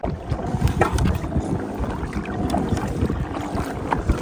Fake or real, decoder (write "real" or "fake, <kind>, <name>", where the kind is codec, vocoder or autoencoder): real